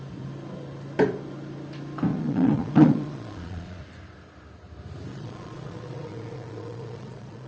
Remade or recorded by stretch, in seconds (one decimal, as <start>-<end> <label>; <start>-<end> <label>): 0.0-2.1 recorded; 2.1-3.8 remade; 3.8-5.1 recorded; 5.1-7.5 remade

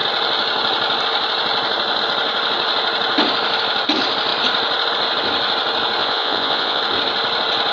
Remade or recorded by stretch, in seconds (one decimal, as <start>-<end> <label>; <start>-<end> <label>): 0.0-6.0 recorded; 6.0-6.8 remade; 6.8-7.7 recorded

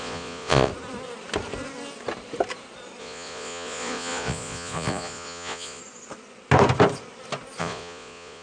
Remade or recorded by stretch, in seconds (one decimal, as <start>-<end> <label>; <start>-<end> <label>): 0.0-0.7 remade; 0.7-3.0 recorded; 3.0-5.8 remade; 5.8-7.6 recorded; 7.6-8.4 remade

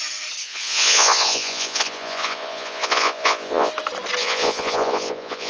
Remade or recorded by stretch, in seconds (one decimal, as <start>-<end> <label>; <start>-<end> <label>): 0.0-0.4 recorded; 0.4-3.7 remade; 3.7-4.2 recorded; 4.2-5.5 remade

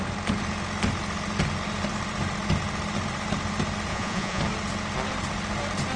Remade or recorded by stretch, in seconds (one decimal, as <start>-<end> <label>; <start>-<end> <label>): 0.0-3.9 recorded; 3.9-4.4 remade; 4.4-6.0 recorded